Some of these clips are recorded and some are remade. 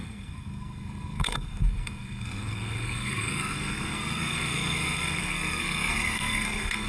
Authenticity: remade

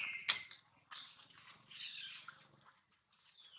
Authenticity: recorded